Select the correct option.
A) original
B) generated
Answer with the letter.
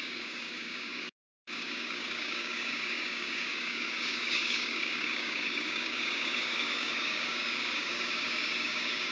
B